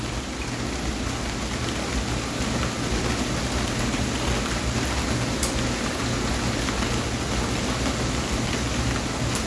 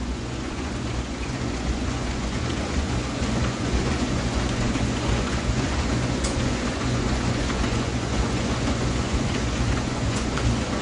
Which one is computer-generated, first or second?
second